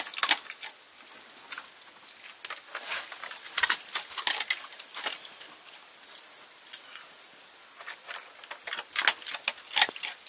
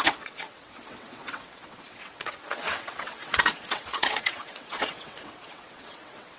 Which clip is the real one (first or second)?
first